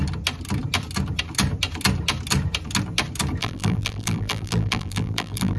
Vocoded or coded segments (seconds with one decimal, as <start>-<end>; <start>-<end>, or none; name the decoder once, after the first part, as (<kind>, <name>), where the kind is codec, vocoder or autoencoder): 3.4-5.6 (vocoder, BigVGAN v2)